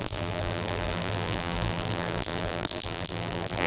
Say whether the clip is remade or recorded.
remade